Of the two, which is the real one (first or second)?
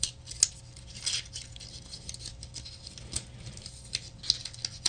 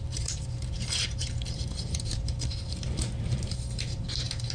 first